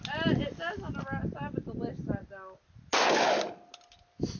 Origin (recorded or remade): recorded